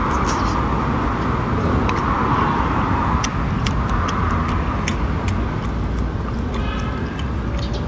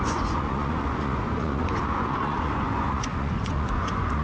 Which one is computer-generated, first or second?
second